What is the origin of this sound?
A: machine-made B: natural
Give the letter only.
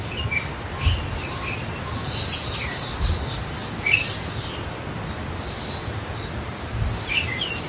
B